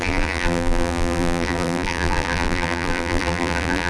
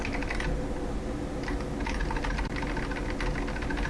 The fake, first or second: first